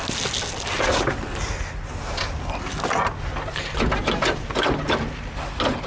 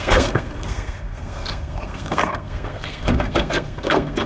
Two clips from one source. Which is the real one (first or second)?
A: first